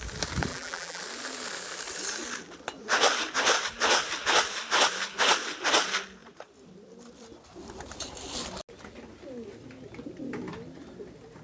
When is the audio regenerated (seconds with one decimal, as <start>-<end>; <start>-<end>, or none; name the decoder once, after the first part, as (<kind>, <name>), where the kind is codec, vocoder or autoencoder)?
0.5-1.0 (vocoder, BigVGAN v2)